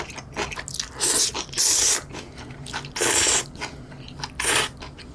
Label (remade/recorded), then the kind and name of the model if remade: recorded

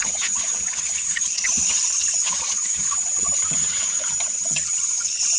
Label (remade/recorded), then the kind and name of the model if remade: remade, vocoder, HiFi-GAN